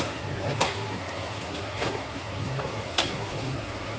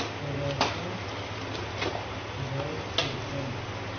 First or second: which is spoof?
first